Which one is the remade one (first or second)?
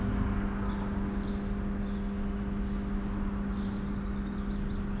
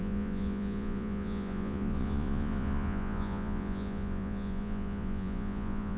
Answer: second